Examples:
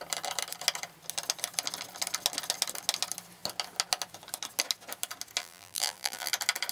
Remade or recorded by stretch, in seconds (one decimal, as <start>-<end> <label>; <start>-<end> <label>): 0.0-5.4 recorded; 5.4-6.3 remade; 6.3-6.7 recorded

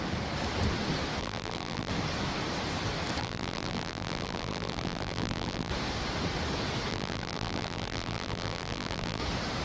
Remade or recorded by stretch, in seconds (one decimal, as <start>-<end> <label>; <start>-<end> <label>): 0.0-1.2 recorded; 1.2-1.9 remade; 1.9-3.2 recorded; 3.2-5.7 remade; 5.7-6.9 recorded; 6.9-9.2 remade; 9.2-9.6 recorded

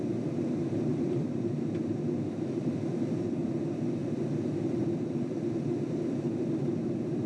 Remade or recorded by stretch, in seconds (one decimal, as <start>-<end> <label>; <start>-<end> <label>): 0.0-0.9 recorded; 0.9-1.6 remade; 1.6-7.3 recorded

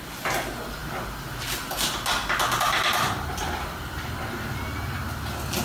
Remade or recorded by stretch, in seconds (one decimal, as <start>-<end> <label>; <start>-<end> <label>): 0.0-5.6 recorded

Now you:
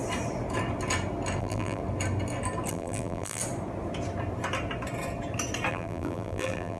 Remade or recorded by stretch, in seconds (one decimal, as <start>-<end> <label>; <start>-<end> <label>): 0.0-1.4 recorded; 1.4-1.8 remade; 1.8-2.7 recorded; 2.7-3.4 remade; 3.4-5.7 recorded; 5.7-6.8 remade